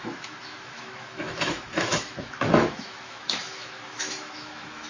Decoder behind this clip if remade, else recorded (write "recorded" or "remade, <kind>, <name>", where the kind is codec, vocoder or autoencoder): remade, autoencoder, DAC-VAE